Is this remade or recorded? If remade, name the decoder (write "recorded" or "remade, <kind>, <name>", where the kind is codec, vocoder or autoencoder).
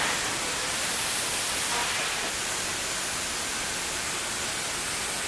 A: recorded